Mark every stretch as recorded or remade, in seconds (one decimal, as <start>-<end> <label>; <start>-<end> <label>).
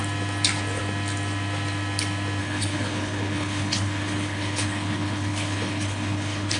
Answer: 0.0-2.4 recorded; 2.4-6.6 remade